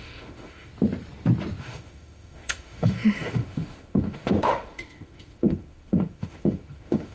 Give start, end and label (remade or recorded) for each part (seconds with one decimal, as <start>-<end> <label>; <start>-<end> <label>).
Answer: 0.0-0.7 remade; 0.7-1.6 recorded; 1.6-7.1 remade